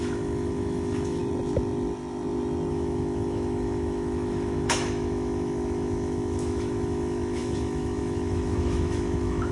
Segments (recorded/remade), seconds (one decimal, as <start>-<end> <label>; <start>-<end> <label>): 0.0-1.2 remade; 1.2-2.7 recorded; 2.7-9.5 remade